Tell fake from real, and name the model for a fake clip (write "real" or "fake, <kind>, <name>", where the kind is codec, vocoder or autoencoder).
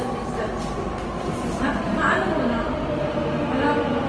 real